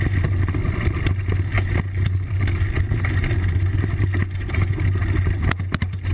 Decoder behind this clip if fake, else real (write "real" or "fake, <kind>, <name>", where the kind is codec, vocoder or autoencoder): real